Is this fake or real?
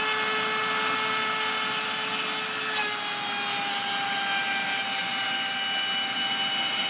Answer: real